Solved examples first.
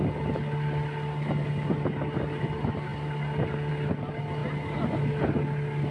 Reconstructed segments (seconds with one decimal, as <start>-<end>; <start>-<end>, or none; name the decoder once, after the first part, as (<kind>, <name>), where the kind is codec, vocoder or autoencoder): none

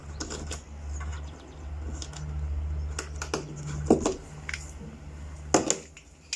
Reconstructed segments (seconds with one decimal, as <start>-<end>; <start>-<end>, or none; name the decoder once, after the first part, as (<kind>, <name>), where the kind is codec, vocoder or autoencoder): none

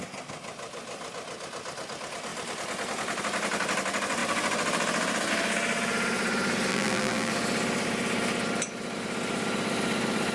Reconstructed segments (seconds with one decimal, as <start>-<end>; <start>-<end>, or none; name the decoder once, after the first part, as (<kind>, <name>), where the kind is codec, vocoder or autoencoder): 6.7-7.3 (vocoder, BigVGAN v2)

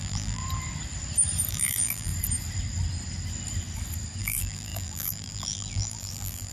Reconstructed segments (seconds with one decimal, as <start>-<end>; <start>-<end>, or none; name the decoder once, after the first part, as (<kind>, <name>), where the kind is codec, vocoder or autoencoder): 0.0-0.4 (vocoder, BigVGAN v2); 1.5-2.1; 4.2-6.5

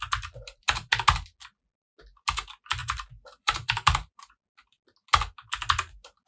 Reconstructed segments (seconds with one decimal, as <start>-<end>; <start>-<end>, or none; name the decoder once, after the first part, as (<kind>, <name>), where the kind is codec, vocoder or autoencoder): 2.8-4.4 (vocoder, BigVGAN v2)

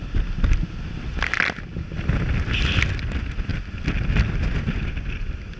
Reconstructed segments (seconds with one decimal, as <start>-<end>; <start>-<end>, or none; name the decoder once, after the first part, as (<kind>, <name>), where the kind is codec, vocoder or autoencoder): none

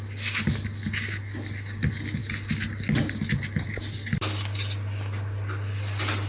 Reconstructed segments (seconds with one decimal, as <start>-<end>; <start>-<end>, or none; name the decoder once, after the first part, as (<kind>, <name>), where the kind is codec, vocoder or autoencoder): none